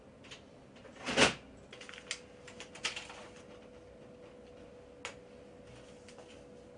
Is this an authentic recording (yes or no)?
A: yes